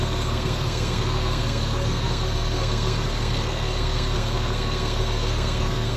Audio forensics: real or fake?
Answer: fake